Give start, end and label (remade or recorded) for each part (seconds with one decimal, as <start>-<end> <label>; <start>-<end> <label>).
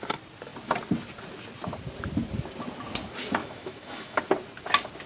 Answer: 0.0-3.4 recorded; 3.4-4.2 remade; 4.2-5.1 recorded